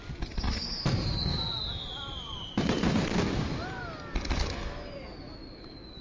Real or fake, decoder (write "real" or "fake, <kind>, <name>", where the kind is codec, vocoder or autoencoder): real